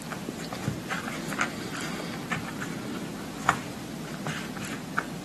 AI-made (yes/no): no